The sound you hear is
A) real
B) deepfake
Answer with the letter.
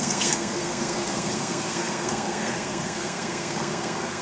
B